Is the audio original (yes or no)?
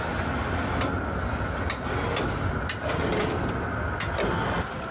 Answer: yes